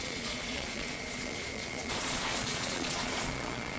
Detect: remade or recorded remade